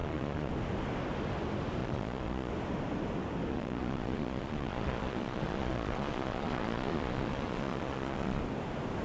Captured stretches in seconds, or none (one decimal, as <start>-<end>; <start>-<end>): 0.5-1.8; 2.5-3.5; 8.4-9.0